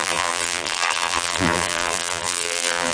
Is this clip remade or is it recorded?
remade